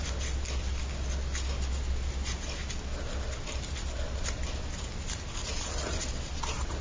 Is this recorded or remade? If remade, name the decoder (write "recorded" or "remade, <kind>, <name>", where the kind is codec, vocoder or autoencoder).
recorded